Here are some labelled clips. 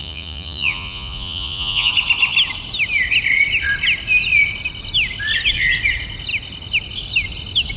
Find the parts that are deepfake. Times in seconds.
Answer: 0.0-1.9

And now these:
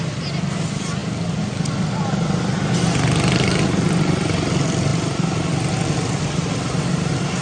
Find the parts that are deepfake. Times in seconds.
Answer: none

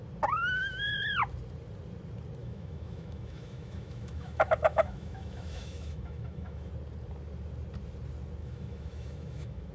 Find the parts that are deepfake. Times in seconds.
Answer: 2.4-6.7; 8.4-9.7

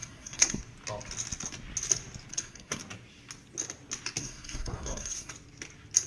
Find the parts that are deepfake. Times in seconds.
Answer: 0.0-0.6; 2.3-2.8; 4.2-5.3

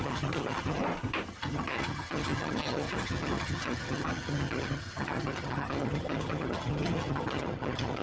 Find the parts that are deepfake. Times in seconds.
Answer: 0.0-0.8; 1.3-8.0

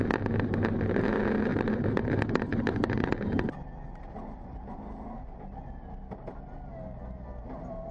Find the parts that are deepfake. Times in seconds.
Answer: none

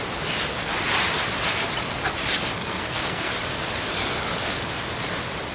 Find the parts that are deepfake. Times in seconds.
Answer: 2.5-3.3

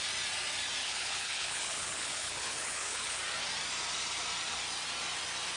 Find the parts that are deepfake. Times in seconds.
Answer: 0.8-3.2